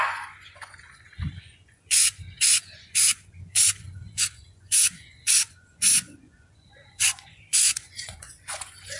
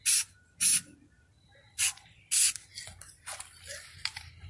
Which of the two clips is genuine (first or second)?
second